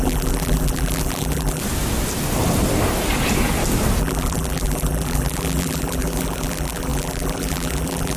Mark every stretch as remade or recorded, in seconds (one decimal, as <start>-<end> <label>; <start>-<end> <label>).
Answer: 0.0-1.6 remade; 1.6-4.0 recorded; 4.0-8.2 remade